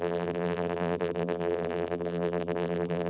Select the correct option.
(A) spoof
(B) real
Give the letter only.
A